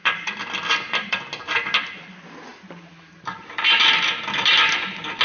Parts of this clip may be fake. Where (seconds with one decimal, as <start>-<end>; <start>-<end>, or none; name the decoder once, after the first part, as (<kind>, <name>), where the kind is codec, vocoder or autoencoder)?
2.5-3.8 (vocoder, BigVGAN v2)